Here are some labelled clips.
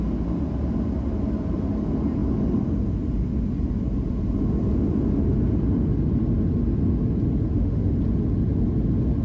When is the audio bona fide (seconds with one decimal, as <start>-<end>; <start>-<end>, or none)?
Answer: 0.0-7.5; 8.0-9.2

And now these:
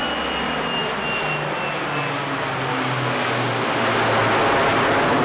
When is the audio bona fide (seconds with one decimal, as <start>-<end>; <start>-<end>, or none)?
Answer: 0.0-2.7; 3.7-5.2

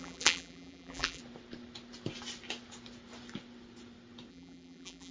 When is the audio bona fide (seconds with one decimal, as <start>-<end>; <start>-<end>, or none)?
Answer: 1.2-4.3

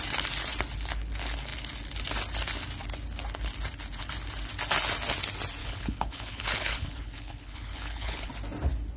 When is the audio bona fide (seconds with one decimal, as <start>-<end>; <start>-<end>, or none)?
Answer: 0.0-5.6; 8.3-9.0

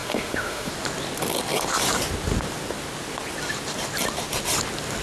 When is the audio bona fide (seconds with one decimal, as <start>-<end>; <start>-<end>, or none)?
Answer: 0.7-5.0

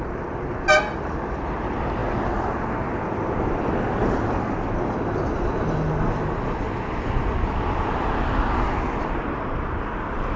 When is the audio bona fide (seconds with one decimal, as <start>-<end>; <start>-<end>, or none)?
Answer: 0.0-10.4